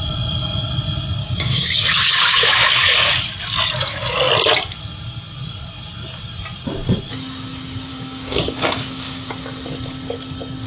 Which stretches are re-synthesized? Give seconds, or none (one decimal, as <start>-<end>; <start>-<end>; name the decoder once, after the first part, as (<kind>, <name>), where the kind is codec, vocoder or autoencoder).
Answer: 1.2-3.2 (codec, DAC); 7.9-9.3